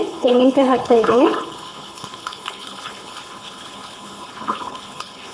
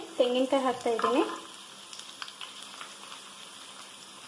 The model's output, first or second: first